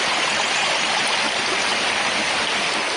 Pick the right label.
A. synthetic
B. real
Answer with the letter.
A